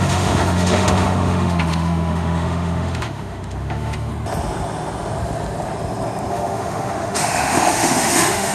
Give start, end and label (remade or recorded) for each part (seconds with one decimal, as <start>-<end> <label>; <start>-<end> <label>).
0.0-4.1 remade; 4.1-6.3 recorded; 6.3-8.5 remade